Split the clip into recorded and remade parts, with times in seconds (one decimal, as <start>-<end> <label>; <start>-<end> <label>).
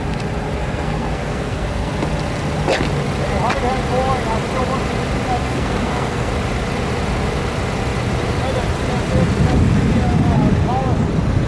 0.0-0.6 recorded; 0.6-1.9 remade; 1.9-5.4 recorded; 5.4-6.3 remade; 6.3-11.5 recorded